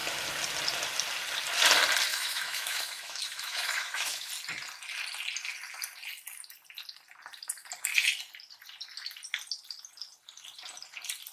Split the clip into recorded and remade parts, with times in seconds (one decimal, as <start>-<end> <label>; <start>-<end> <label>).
0.0-2.1 recorded; 2.1-4.3 remade; 4.3-11.3 recorded